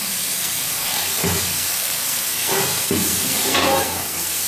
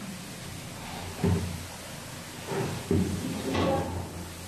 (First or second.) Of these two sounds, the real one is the second